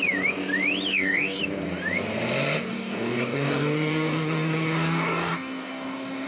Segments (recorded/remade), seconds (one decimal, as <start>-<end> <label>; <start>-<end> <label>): 0.0-0.9 recorded; 0.9-1.4 remade; 1.4-2.7 recorded; 2.7-6.3 remade